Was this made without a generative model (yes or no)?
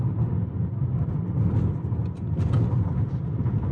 yes